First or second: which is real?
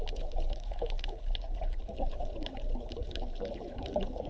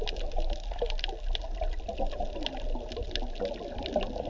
second